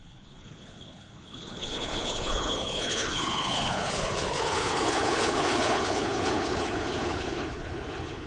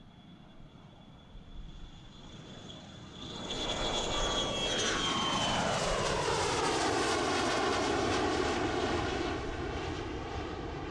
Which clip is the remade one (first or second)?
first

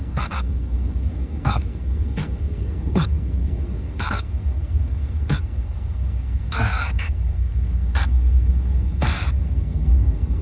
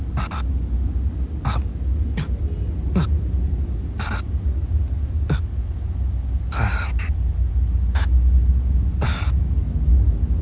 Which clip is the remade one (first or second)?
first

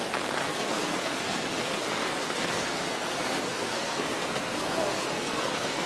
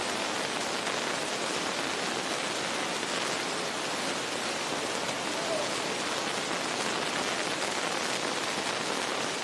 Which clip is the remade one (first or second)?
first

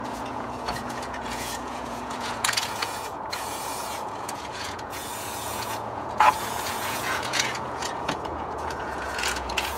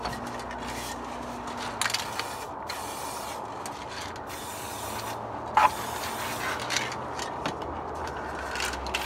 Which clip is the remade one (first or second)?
first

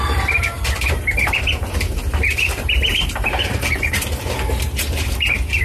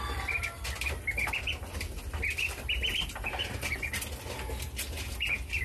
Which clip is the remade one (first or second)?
first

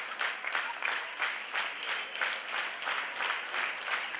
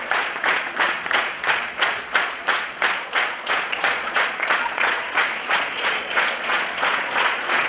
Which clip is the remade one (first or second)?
second